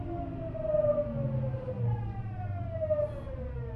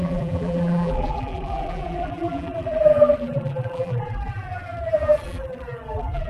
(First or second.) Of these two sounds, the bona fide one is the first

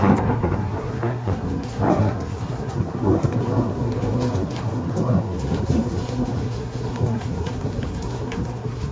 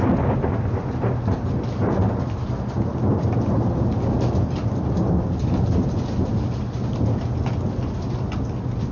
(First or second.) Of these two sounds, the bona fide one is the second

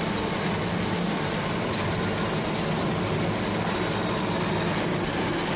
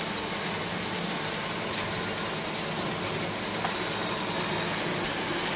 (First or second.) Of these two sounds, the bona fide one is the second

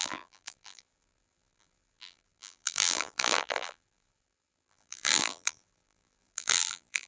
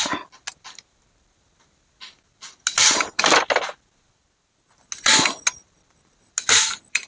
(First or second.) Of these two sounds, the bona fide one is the second